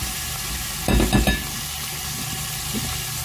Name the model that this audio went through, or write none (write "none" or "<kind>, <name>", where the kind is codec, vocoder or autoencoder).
none